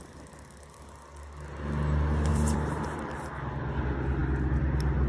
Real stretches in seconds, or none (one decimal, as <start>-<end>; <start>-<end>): 0.0-2.3; 3.8-5.1